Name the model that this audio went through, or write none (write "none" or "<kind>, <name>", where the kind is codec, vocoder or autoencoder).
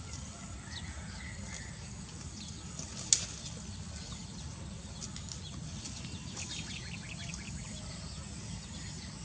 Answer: none